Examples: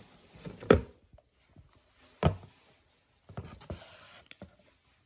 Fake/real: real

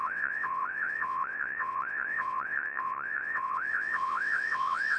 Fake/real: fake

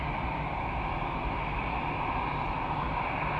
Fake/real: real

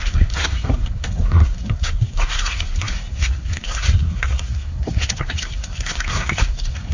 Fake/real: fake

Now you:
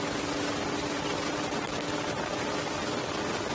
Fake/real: real